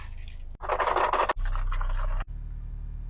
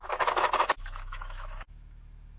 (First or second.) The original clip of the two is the first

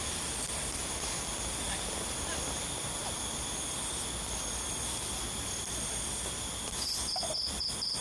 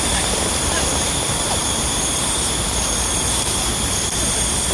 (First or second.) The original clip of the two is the first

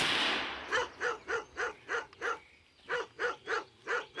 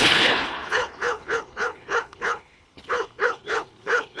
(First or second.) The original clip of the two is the first